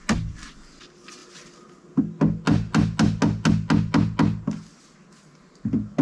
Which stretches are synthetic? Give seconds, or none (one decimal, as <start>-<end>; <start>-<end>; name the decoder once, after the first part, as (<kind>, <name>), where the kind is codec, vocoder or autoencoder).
none